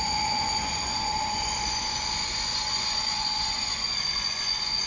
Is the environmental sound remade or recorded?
remade